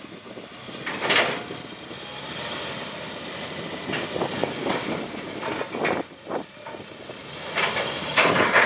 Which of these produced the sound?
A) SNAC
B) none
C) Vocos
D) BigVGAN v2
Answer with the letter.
B